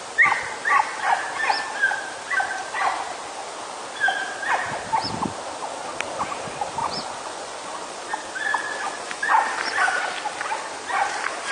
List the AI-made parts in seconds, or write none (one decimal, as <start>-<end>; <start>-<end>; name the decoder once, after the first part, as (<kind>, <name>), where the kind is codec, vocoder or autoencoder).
6.8-8.1 (vocoder, Vocos); 8.7-9.3